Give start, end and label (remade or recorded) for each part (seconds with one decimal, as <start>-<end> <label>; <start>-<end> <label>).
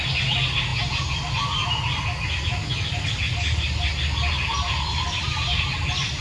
0.0-6.2 recorded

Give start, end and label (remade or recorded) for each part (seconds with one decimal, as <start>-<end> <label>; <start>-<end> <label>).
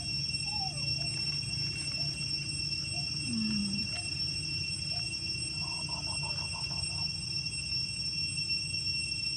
0.0-9.4 recorded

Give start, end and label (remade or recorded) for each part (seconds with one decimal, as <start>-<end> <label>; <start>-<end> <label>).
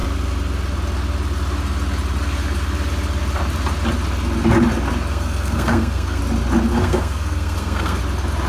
0.0-5.1 recorded; 5.1-6.2 remade; 6.2-6.7 recorded; 6.7-8.0 remade; 8.0-8.5 recorded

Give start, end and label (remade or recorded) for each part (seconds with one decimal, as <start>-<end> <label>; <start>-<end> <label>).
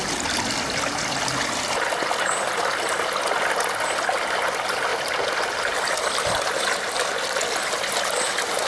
0.0-8.7 recorded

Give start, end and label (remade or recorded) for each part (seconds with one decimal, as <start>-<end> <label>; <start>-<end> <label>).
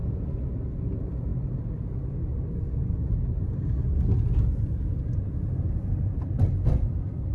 0.0-7.3 recorded